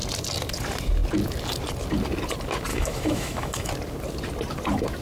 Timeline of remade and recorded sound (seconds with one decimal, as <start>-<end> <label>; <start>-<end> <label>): 0.0-2.7 recorded; 2.7-3.7 remade; 3.7-5.0 recorded